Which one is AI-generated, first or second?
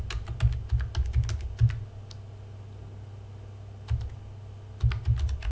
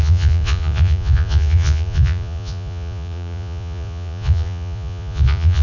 second